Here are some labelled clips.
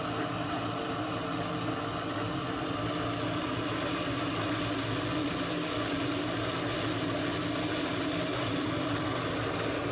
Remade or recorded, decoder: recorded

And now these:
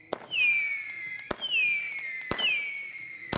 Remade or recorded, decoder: recorded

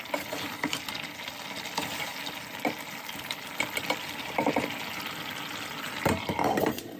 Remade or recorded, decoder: recorded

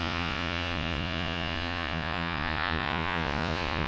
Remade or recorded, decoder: remade, vocoder, Vocos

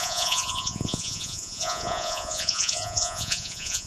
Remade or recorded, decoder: remade, vocoder, Vocos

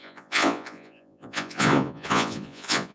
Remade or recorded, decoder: remade, vocoder, Vocos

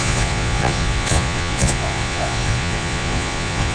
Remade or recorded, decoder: remade, vocoder, Vocos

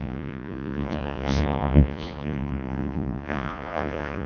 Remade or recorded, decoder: remade, vocoder, Vocos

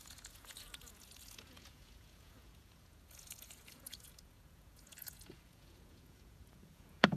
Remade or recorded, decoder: remade, vocoder, Vocos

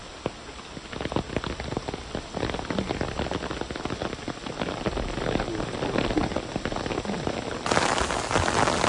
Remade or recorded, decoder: recorded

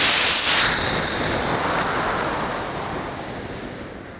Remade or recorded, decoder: recorded